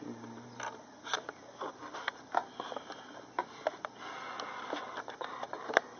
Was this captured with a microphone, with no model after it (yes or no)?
yes